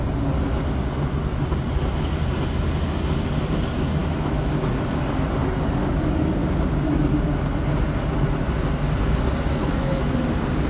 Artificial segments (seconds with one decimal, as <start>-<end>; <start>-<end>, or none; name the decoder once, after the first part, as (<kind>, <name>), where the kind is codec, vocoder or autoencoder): 4.0-4.7 (autoencoder, DAC-VAE); 9.6-10.2